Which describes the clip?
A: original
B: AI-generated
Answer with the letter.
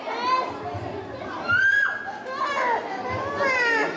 A